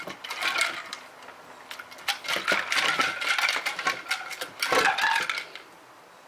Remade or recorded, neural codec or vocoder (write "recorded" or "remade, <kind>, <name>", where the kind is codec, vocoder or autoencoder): recorded